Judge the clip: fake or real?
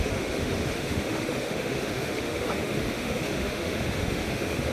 fake